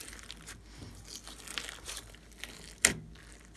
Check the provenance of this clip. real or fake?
real